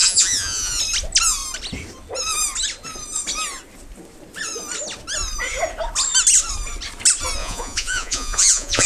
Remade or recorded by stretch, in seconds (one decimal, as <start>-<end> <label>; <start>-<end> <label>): 0.0-0.8 remade; 0.8-7.4 recorded; 7.4-8.9 remade